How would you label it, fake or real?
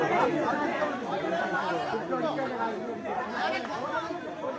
real